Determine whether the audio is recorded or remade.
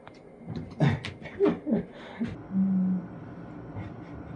recorded